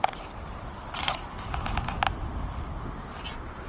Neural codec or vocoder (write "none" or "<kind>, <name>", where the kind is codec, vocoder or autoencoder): none